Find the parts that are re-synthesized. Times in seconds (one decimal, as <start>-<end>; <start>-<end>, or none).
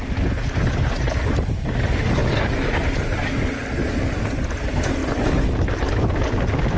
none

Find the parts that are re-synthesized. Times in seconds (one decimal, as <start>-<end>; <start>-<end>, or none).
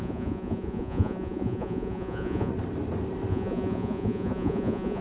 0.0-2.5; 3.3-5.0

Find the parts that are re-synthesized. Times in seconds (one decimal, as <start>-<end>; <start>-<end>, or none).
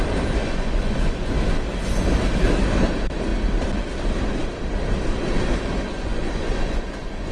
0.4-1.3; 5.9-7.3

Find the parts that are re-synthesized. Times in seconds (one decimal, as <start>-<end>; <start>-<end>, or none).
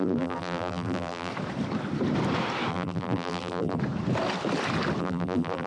0.0-1.3; 2.7-3.8; 5.0-5.7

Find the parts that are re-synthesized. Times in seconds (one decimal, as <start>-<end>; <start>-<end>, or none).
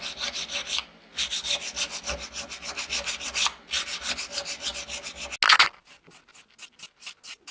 none